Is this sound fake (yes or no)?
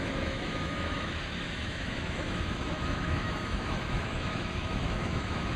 yes